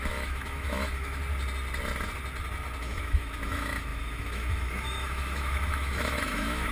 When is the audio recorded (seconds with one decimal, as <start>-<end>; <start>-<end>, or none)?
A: 1.2-2.8